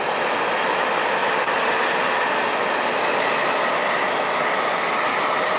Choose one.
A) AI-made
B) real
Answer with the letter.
B